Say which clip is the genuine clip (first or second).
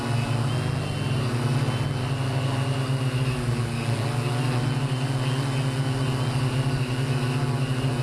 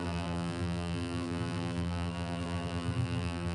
first